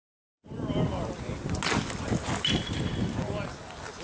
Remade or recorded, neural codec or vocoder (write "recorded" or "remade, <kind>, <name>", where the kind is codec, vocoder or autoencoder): recorded